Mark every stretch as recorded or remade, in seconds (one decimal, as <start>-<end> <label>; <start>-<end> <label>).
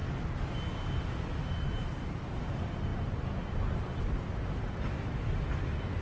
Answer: 0.0-6.0 recorded